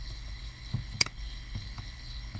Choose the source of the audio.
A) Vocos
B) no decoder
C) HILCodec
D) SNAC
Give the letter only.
C